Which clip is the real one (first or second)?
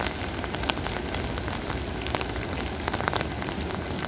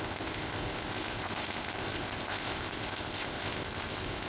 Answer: first